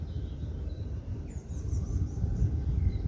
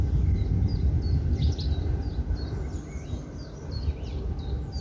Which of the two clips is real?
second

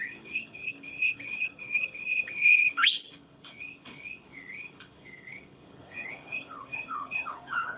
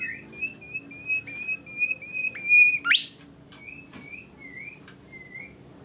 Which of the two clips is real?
second